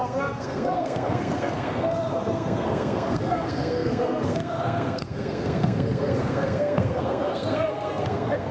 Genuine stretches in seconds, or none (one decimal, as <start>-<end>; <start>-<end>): none